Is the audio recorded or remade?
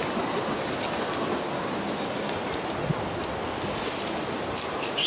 recorded